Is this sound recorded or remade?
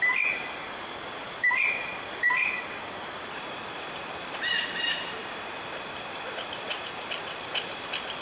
remade